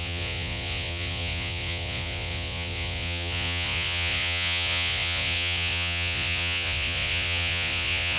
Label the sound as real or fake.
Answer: fake